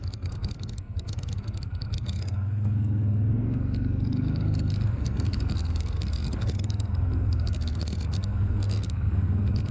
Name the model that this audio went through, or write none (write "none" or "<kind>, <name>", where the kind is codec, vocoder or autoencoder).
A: codec, SNAC